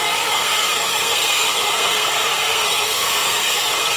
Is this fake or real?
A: fake